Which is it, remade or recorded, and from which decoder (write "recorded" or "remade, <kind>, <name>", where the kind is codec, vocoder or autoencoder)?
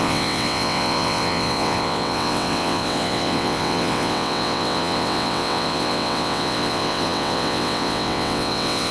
remade, vocoder, WaveNeXt